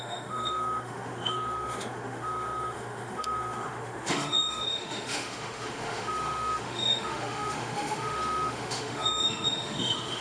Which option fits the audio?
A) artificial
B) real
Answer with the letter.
A